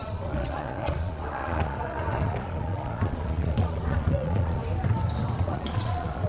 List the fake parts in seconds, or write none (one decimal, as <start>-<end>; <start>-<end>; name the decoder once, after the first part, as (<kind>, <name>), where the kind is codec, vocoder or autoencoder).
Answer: 0.0-4.6 (vocoder, Vocos); 5.4-6.3